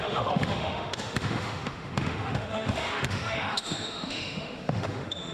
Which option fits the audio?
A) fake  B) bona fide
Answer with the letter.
A